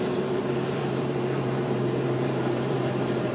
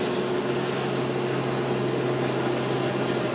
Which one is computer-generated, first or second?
first